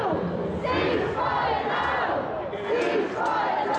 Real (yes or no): yes